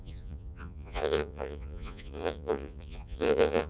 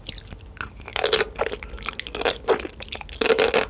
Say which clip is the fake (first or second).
first